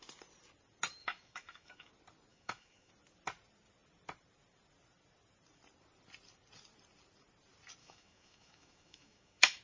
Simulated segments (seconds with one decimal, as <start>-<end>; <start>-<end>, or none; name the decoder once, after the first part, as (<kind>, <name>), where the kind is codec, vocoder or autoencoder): 1.0-1.9 (autoencoder, DAC-VAE); 2.3-2.9; 7.8-9.6

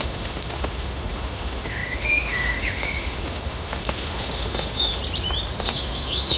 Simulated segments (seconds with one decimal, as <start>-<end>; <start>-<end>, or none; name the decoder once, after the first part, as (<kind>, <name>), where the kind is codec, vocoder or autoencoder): 0.0-5.0 (autoencoder, DAC-VAE); 5.6-6.4

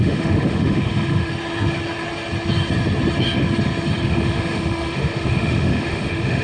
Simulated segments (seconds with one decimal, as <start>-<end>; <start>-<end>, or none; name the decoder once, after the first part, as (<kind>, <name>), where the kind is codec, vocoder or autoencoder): 0.0-1.3 (autoencoder, DAC-VAE); 4.0-6.4

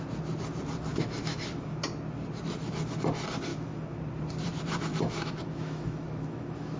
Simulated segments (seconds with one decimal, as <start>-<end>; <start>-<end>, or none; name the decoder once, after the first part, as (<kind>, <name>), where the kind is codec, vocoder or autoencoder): 0.9-1.8 (autoencoder, DAC-VAE); 3.5-4.0; 4.9-6.8

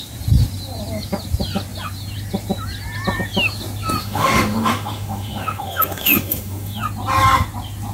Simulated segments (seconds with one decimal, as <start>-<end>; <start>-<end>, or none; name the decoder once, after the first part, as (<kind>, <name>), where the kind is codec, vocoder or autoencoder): 4.0-6.8 (autoencoder, DAC-VAE)

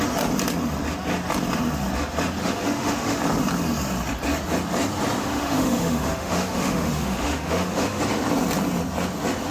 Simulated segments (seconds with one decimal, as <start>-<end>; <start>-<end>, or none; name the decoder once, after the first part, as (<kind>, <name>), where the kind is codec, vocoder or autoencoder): 2.4-3.2 (autoencoder, DAC-VAE); 5.2-8.0

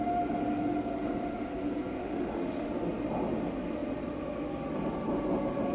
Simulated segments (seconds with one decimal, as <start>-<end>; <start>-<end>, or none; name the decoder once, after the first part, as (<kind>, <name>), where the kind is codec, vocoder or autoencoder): 2.0-2.7 (autoencoder, DAC-VAE)

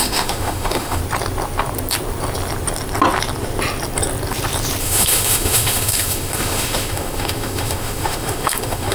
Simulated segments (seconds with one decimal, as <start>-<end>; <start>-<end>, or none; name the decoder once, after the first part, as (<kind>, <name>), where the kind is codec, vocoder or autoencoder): 0.0-1.0 (autoencoder, DAC-VAE); 4.8-8.9